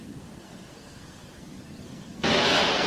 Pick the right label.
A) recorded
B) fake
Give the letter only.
B